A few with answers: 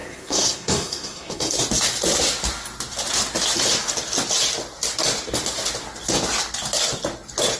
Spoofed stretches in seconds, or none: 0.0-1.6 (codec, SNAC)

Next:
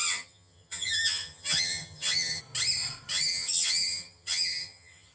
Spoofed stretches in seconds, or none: 0.0-2.4 (vocoder, HiFi-GAN); 3.1-5.1

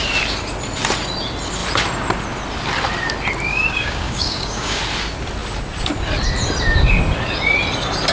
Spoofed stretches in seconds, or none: 3.5-4.8 (codec, DAC)

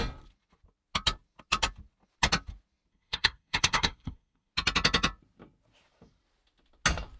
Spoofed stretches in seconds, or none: 2.9-4.5 (codec, SNAC)

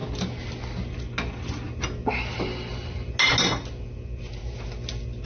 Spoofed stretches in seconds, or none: none

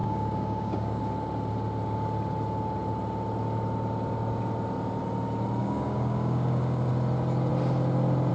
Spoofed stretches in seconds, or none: 0.0-1.0 (codec, DAC); 5.6-6.9

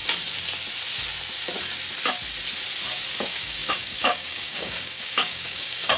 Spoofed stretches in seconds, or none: 3.2-6.0 (codec, DAC)